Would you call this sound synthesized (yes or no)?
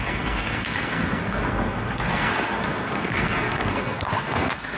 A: yes